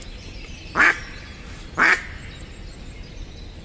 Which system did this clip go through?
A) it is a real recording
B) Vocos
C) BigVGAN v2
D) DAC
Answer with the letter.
A